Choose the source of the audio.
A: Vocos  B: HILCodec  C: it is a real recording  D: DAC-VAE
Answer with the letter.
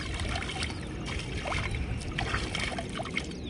C